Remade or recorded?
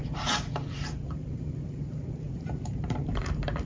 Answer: remade